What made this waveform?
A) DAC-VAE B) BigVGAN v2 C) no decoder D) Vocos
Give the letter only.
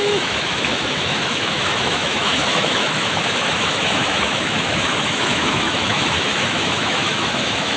A